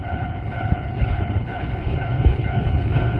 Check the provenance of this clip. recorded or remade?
remade